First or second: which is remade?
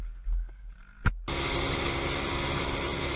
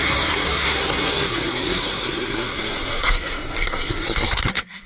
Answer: second